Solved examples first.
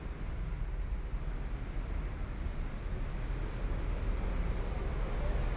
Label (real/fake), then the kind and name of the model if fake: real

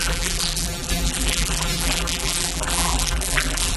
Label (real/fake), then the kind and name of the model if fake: fake, vocoder, BigVGAN v2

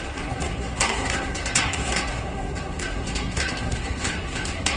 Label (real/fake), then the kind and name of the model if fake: fake, codec, SNAC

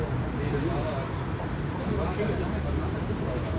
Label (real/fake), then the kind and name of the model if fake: real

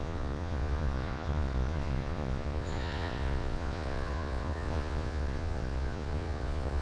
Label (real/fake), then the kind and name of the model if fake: fake, vocoder, Vocos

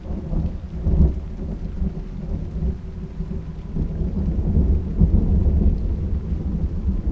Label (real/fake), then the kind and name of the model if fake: real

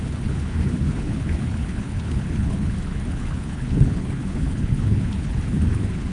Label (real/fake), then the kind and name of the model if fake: fake, codec, HILCodec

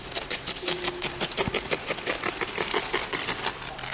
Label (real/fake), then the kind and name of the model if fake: real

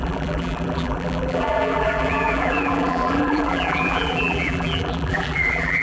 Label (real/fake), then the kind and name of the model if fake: fake, vocoder, BigVGAN v2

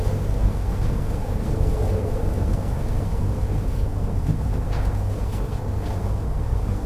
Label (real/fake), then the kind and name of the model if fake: fake, codec, SNAC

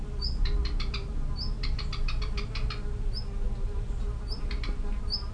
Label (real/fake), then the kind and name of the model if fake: real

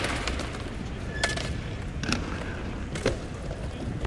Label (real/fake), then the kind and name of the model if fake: real